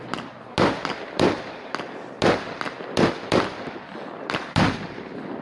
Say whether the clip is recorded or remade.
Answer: recorded